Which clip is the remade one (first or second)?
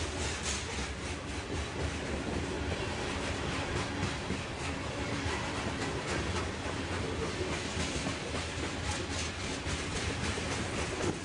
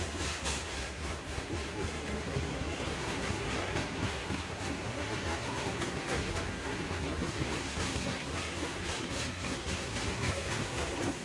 second